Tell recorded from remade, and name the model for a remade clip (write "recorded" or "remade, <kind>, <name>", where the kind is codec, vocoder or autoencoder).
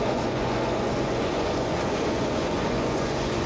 remade, vocoder, Vocos